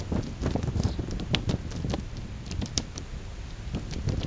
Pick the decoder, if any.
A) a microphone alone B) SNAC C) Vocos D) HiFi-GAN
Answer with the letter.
A